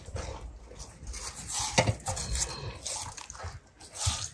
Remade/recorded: recorded